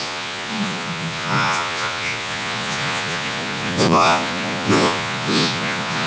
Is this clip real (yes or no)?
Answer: no